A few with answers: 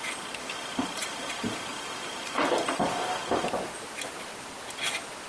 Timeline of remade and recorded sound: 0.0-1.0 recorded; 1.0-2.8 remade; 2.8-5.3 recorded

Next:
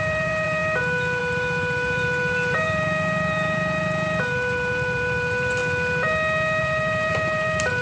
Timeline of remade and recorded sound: 0.0-0.6 remade; 0.6-1.2 recorded; 1.2-5.6 remade; 5.6-6.6 recorded; 6.6-7.8 remade

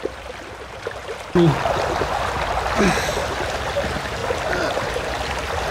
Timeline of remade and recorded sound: 0.0-1.0 remade; 1.0-3.2 recorded; 3.2-5.7 remade

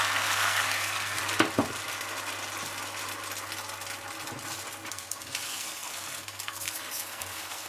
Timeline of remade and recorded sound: 0.0-1.2 remade; 1.2-4.9 recorded; 4.9-7.7 remade

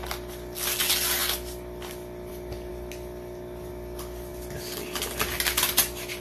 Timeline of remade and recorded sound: 0.0-6.2 recorded

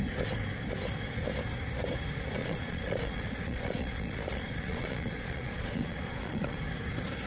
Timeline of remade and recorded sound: 0.0-2.4 recorded; 2.4-6.6 remade; 6.6-7.3 recorded